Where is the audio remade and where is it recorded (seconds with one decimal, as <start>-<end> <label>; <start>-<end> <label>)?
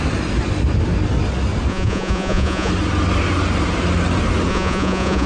0.0-1.7 recorded; 1.7-2.7 remade; 2.7-4.5 recorded; 4.5-5.3 remade